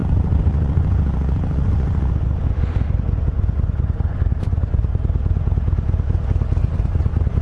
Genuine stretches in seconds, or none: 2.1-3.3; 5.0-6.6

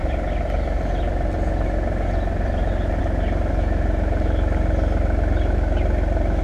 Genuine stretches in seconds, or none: 0.0-6.4

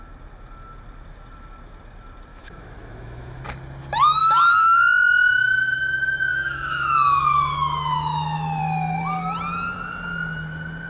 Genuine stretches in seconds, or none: 0.0-2.3; 3.4-4.2; 5.8-6.3; 8.6-10.9

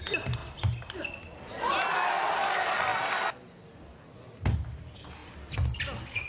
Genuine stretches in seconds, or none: 0.0-6.3